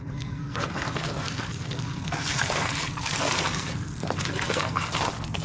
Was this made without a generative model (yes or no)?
no